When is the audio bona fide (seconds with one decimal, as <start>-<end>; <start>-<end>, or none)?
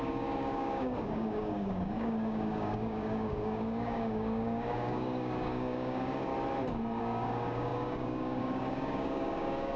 6.3-7.0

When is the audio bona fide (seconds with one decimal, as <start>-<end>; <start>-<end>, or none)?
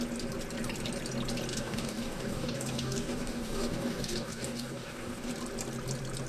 0.0-1.5; 5.3-6.3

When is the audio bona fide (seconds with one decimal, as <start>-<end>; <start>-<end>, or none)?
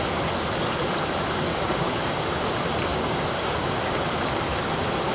0.0-1.5; 2.4-2.9; 4.0-5.1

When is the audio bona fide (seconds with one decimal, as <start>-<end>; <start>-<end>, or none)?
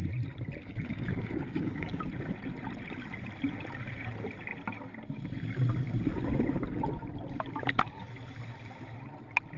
0.0-0.6; 2.0-9.6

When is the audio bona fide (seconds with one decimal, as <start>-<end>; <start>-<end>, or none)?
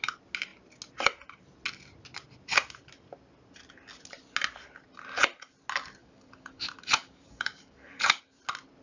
0.0-6.0; 8.2-8.8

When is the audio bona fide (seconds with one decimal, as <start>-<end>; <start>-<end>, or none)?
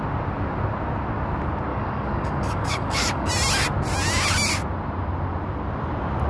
0.0-1.7; 3.3-6.3